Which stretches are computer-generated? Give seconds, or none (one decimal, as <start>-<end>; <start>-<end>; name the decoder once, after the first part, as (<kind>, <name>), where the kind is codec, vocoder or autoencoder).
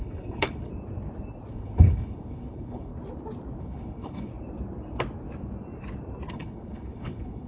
0.0-0.7 (codec, HILCodec); 1.5-2.9; 3.6-4.3; 6.3-7.5